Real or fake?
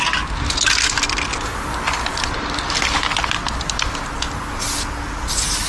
real